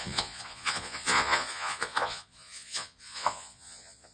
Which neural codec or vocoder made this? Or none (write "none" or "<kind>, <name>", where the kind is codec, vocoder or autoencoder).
vocoder, Vocos